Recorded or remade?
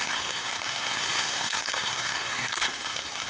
remade